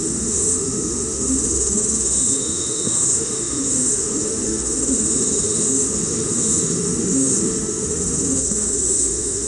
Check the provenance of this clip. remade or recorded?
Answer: remade